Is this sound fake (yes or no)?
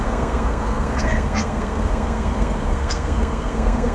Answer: yes